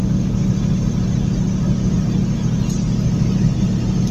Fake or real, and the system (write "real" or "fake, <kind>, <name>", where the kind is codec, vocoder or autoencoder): real